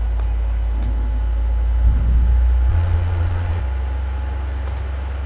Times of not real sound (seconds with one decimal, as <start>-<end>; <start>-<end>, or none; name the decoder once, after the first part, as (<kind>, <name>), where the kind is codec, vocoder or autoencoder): 2.7-3.6 (vocoder, Vocos)